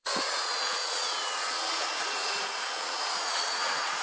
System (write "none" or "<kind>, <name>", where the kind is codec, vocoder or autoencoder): vocoder, Vocos